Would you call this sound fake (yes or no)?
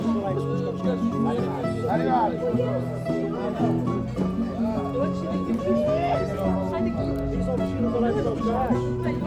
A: no